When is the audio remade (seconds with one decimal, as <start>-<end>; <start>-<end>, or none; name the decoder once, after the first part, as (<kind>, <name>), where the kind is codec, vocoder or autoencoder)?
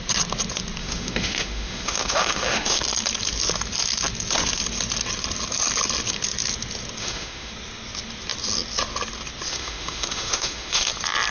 0.8-2.8 (autoencoder, DAC-VAE); 7.0-7.5; 9.5-10.9